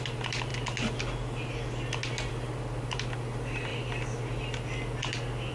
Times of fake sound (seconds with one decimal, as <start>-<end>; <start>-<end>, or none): 0.0-0.5; 2.3-3.7